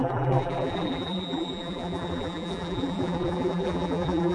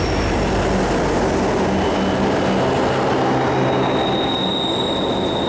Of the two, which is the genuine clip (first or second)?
second